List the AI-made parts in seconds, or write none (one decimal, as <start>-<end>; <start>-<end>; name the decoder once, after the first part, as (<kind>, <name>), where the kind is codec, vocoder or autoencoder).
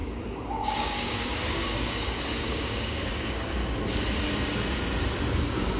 0.0-3.6 (codec, DAC); 5.3-5.8